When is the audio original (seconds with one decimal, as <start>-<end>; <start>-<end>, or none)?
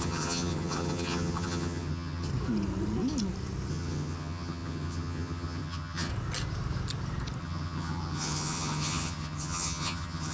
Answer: 2.3-3.7; 6.1-7.4